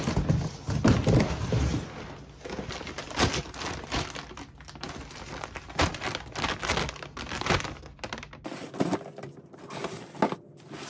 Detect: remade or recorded recorded